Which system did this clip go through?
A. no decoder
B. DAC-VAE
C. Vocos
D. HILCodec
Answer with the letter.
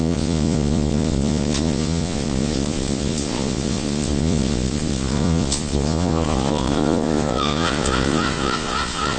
C